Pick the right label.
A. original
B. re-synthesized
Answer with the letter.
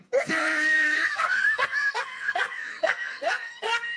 B